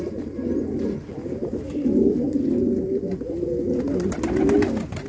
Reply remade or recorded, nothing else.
recorded